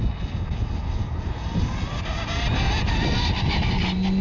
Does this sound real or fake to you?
real